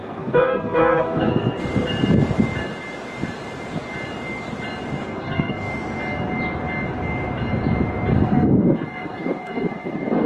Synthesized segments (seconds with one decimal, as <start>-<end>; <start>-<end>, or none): 0.0-1.7; 5.0-5.7; 8.1-10.3